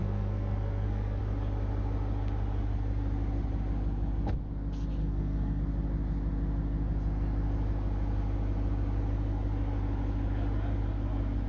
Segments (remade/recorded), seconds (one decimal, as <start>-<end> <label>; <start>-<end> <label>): 0.0-1.2 remade; 1.2-5.0 recorded; 5.0-5.6 remade; 5.6-11.5 recorded